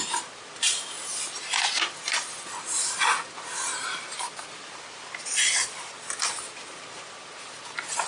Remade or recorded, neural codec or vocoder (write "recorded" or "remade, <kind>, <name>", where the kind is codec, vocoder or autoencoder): recorded